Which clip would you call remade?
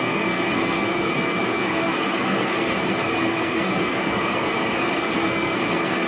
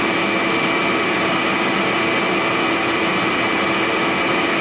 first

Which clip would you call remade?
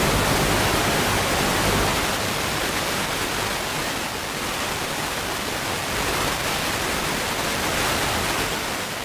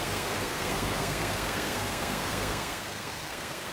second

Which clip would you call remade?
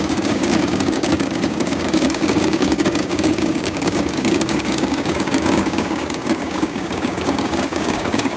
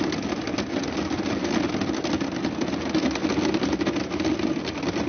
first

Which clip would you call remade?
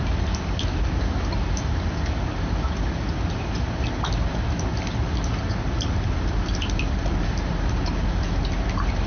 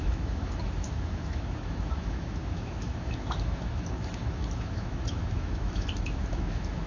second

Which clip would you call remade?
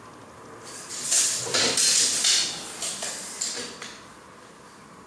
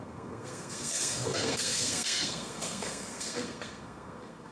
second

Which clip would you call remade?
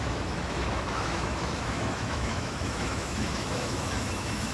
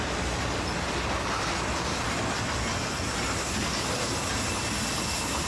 first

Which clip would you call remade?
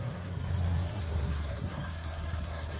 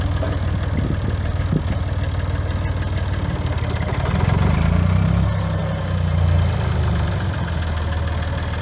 first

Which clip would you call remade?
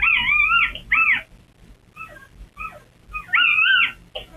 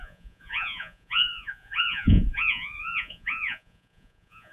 second